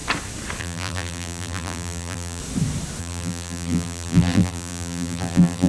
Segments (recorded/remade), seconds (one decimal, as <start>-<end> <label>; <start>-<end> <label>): 0.0-0.6 recorded; 0.6-2.4 remade; 2.4-3.0 recorded; 3.0-5.7 remade